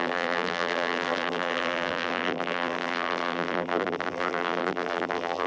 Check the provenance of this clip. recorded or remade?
remade